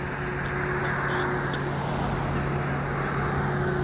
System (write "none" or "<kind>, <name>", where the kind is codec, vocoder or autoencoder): none